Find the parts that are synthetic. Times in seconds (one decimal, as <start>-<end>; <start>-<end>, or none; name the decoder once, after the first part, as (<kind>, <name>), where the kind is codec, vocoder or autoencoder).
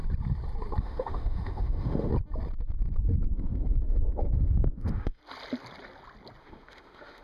0.8-2.1 (autoencoder, DAC-VAE); 3.3-5.2; 6.4-7.2